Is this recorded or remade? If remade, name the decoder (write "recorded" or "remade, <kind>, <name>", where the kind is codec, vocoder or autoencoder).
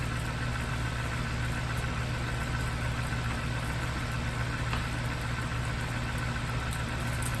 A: recorded